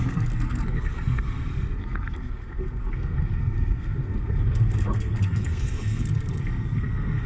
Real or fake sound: fake